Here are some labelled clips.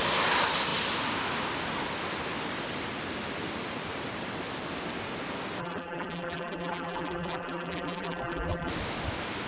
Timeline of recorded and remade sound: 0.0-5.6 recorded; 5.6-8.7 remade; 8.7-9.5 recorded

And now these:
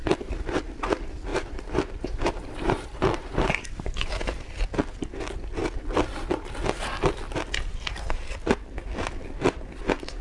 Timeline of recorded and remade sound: 0.0-1.3 recorded; 1.3-4.1 remade; 4.1-10.2 recorded

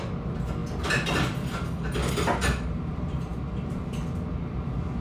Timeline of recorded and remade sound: 0.0-0.6 remade; 0.6-2.9 recorded; 2.9-3.3 remade; 3.3-5.0 recorded

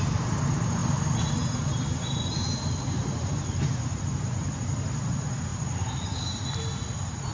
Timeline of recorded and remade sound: 0.0-7.3 recorded

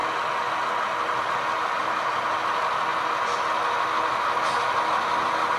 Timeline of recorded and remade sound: 0.0-1.8 recorded; 1.8-2.3 remade; 2.3-5.6 recorded